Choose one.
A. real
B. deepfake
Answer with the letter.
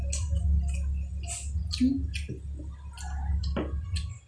A